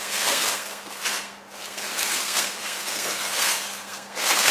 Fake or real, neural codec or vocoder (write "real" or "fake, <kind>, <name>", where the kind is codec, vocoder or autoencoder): fake, codec, SNAC